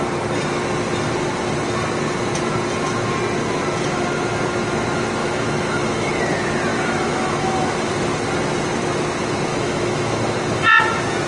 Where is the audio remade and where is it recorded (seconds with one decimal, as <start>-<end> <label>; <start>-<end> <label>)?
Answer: 0.0-5.2 recorded; 5.2-6.1 remade; 6.1-6.7 recorded; 6.7-7.9 remade; 7.9-9.5 recorded; 9.5-10.2 remade; 10.2-11.3 recorded